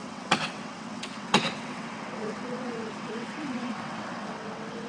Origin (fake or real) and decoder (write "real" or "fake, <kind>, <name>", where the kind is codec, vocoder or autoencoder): fake, vocoder, WaveNeXt